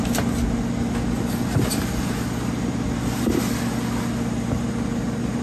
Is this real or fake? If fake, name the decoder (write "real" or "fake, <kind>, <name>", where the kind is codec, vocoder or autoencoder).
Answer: real